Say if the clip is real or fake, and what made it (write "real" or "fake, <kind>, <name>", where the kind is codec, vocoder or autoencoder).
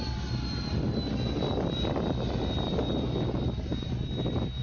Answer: real